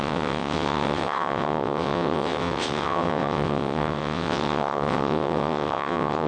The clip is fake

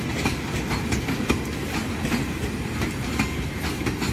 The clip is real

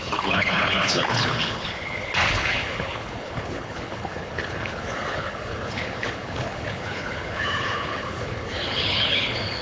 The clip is fake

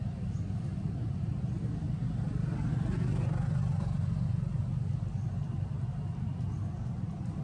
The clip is real